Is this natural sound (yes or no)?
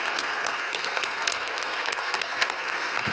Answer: no